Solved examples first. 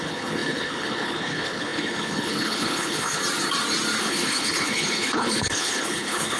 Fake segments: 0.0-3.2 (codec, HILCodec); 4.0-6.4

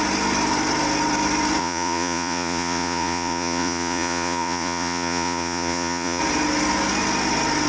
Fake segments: 1.6-6.2 (vocoder, Vocos)